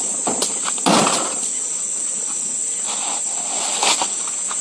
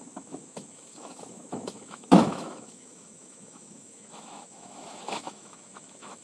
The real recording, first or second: first